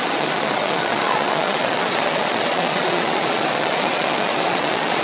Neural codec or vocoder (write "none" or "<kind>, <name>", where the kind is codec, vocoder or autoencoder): vocoder, Vocos